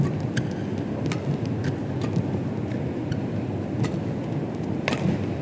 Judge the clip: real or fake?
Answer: real